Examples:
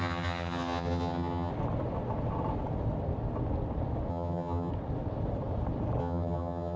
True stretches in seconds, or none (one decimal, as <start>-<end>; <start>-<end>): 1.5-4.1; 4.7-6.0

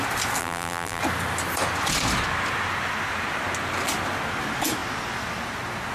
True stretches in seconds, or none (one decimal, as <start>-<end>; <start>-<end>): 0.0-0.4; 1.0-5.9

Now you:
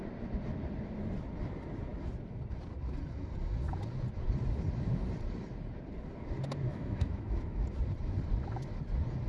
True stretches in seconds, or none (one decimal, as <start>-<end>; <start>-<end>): 0.0-6.7; 7.6-9.3